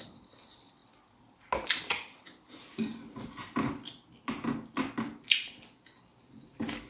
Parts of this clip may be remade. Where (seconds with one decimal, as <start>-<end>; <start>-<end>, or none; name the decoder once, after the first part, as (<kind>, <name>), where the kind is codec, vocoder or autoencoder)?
none